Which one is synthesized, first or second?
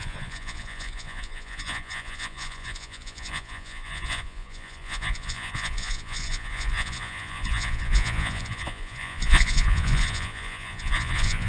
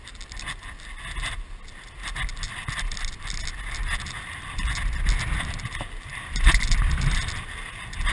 first